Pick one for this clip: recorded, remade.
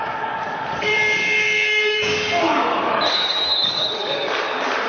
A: remade